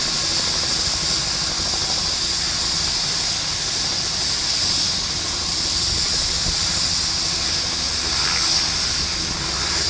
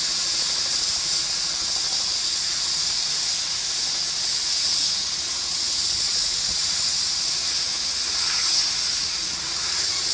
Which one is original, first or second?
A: first